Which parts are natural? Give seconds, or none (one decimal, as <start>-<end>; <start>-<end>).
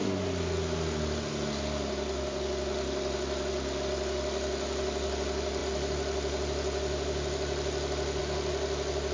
0.0-9.1